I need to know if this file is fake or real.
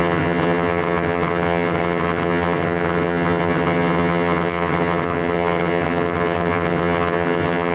fake